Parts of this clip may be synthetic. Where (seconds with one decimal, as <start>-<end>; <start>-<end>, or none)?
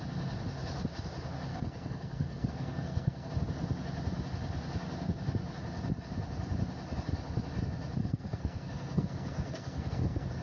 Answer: 1.5-3.3; 8.0-10.4